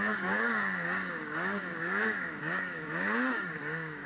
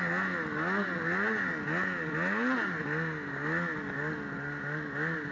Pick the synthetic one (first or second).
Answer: first